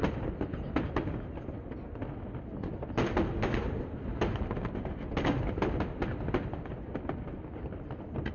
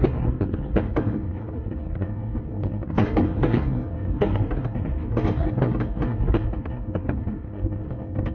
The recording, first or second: first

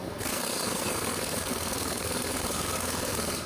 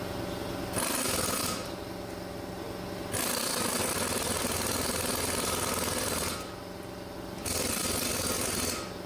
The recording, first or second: second